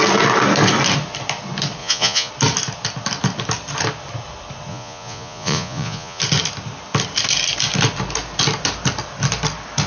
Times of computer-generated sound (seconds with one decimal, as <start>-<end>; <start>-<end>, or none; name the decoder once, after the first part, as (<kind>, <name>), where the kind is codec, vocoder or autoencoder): 1.8-2.3 (vocoder, Vocos); 4.7-6.2